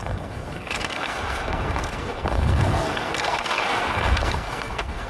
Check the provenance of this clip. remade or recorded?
remade